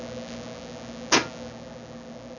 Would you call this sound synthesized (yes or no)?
no